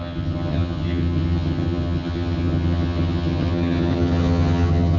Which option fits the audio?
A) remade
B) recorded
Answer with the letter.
A